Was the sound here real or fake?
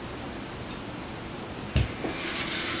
real